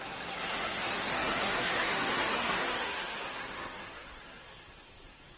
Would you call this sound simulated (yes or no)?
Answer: yes